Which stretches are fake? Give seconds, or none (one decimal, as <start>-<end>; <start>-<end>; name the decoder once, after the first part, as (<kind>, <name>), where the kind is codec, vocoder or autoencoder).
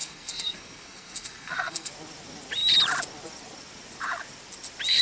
0.0-1.9 (codec, SNAC)